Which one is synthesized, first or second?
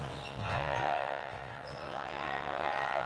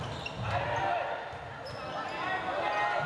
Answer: first